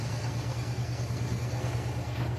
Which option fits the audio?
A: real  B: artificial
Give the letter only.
B